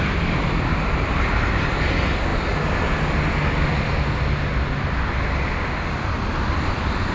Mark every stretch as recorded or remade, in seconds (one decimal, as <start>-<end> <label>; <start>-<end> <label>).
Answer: 0.0-7.1 recorded